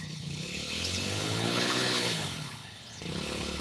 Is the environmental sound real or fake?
fake